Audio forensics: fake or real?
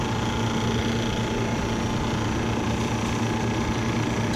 real